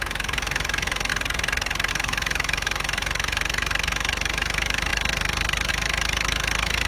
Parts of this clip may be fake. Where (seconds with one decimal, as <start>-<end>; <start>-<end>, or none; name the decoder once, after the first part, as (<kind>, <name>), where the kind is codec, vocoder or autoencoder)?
0.0-1.1 (autoencoder, DAC-VAE); 1.9-6.9